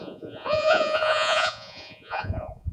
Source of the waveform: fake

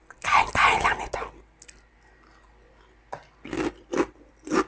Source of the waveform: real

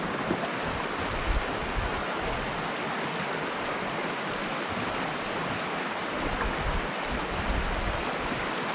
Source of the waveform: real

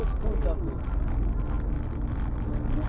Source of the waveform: real